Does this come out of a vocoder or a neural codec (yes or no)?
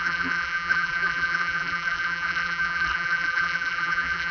yes